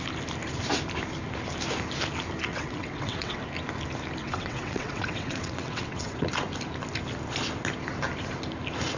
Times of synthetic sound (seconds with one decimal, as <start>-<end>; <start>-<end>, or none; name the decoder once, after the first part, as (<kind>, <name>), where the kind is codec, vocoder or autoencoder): 2.5-3.4 (vocoder, WaveNeXt); 4.2-6.3